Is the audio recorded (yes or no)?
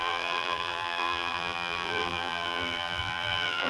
no